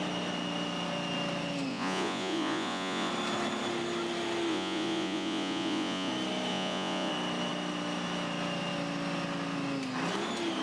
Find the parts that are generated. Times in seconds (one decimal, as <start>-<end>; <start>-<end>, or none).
1.7-3.1; 4.5-6.1; 6.5-7.1